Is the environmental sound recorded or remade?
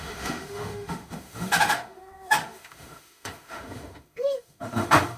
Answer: remade